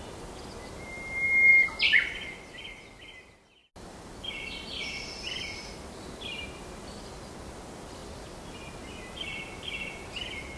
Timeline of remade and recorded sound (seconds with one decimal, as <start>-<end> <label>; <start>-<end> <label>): 0.0-10.6 recorded